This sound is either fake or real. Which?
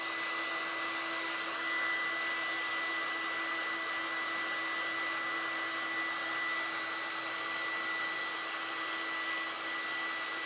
real